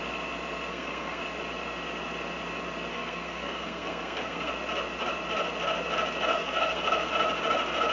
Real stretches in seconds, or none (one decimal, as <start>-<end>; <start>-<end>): 0.0-0.7; 1.2-2.9; 4.5-6.3; 7.1-7.9

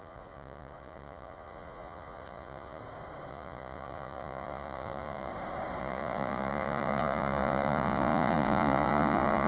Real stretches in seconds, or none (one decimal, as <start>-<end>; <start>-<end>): 2.8-3.3; 5.3-5.8

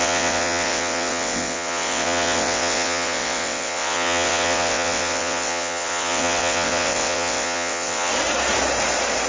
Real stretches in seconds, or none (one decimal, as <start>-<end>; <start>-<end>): 8.1-9.3

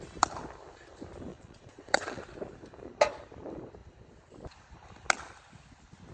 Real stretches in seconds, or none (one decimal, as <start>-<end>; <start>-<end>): 0.0-1.3; 2.2-6.1

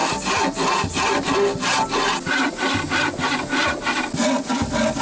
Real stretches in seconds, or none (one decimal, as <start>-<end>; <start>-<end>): 0.0-5.0

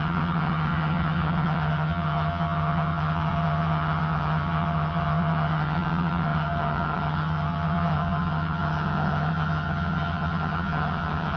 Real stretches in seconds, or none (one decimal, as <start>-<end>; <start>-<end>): none